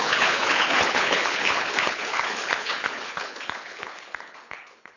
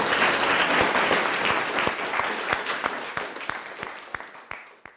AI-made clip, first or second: first